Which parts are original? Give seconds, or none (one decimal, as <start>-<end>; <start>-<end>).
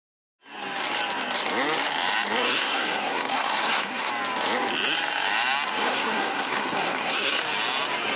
0.0-2.4; 4.1-5.8; 7.4-8.2